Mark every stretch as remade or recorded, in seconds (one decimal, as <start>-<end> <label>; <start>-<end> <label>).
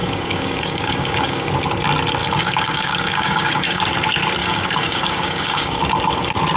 0.0-1.5 remade; 1.5-2.2 recorded; 2.2-3.8 remade; 3.8-4.4 recorded; 4.4-5.8 remade; 5.8-6.6 recorded